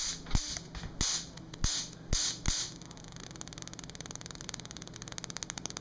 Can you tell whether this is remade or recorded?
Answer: recorded